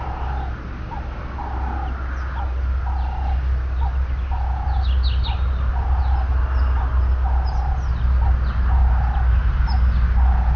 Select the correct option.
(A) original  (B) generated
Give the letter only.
A